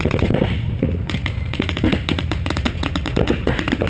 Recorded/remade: remade